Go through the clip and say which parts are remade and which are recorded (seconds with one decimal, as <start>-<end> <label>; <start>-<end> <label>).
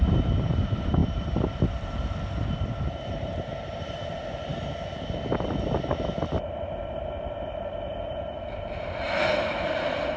0.0-4.5 remade; 4.5-7.0 recorded; 7.0-10.2 remade